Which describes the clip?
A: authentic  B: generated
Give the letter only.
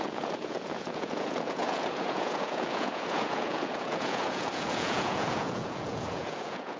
B